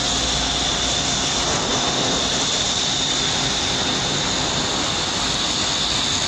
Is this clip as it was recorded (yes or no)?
yes